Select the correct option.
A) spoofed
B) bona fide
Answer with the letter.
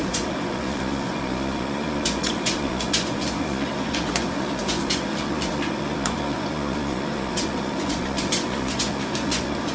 A